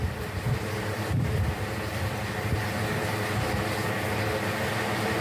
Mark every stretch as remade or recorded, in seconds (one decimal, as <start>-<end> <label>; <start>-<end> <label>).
0.0-3.1 remade; 3.1-5.2 recorded